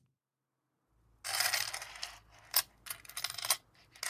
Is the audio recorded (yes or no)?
yes